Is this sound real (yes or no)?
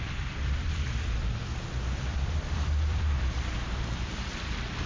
no